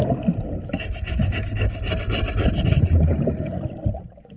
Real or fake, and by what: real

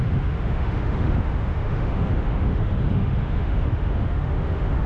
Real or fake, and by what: fake, autoencoder, DAC-VAE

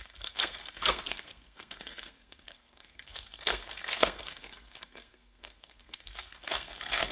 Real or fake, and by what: fake, codec, SNAC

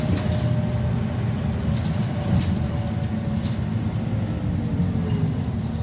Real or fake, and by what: real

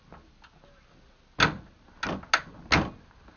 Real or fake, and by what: real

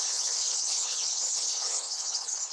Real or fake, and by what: fake, codec, HILCodec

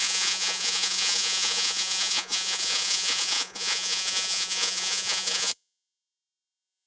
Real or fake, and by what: fake, vocoder, Vocos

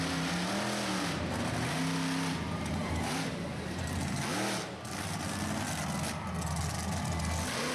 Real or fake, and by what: real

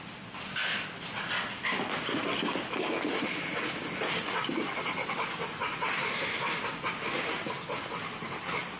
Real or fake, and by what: real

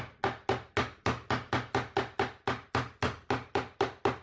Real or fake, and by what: real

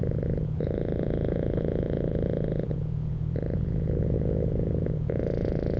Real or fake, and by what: fake, vocoder, Vocos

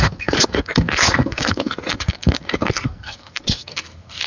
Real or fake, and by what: fake, codec, SNAC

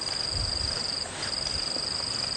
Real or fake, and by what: fake, vocoder, BigVGAN v2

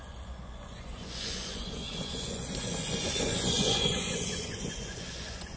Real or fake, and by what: fake, vocoder, Vocos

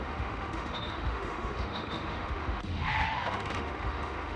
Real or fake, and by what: fake, autoencoder, DAC-VAE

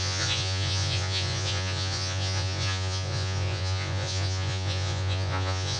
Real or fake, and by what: fake, vocoder, Vocos